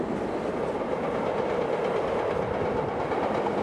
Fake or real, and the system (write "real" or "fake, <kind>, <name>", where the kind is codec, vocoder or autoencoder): real